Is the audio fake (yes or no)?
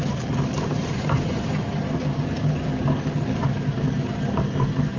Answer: no